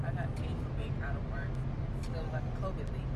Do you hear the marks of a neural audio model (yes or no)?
no